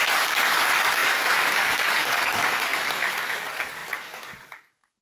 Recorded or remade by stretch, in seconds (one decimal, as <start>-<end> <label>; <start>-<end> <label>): 0.0-5.0 remade